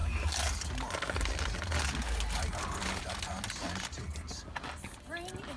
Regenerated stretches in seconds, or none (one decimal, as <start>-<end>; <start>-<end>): none